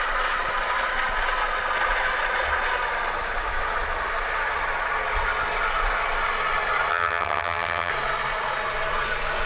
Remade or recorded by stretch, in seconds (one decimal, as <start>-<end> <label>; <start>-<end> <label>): 0.0-6.9 recorded; 6.9-7.9 remade; 7.9-9.5 recorded